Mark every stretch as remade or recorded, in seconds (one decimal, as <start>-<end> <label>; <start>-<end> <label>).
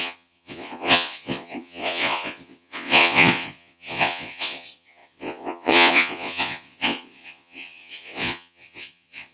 0.0-9.3 remade